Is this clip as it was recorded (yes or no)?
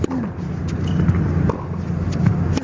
yes